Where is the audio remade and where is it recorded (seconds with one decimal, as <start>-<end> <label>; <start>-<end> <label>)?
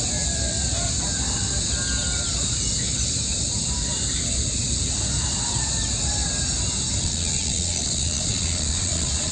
0.0-7.0 recorded; 7.0-9.3 remade